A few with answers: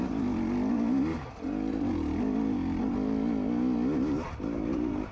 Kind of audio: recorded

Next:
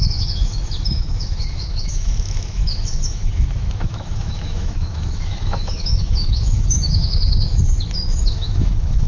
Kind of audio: remade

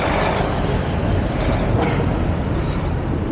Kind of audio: recorded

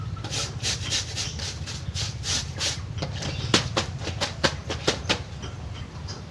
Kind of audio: recorded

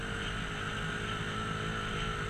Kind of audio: recorded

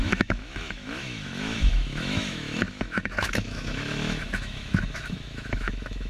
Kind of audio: remade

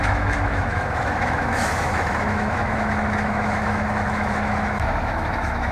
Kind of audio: remade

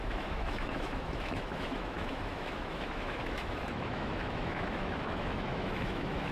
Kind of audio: remade